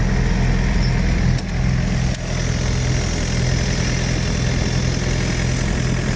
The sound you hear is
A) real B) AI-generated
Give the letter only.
A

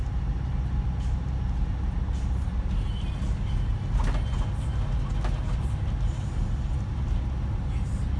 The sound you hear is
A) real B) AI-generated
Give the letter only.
A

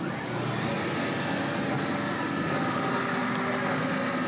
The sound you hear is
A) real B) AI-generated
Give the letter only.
A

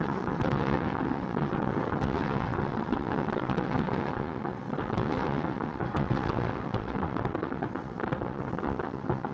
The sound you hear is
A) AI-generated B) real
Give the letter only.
A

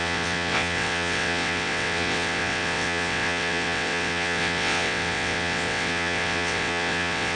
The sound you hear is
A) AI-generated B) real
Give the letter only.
A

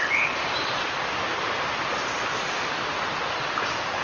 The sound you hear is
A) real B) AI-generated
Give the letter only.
A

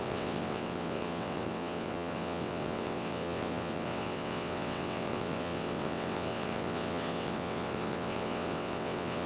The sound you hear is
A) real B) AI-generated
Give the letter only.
B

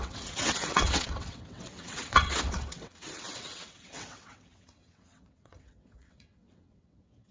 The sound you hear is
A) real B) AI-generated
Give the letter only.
B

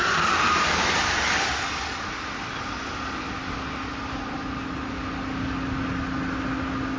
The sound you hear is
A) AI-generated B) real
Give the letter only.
B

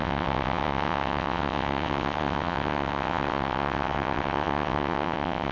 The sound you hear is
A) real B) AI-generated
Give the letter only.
B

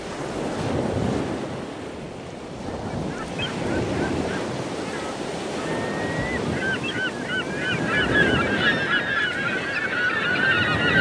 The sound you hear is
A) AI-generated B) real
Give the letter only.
B